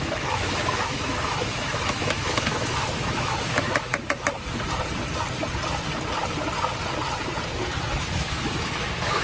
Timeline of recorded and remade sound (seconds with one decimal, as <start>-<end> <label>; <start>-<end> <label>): 0.0-3.9 remade; 3.9-8.0 recorded; 8.0-9.2 remade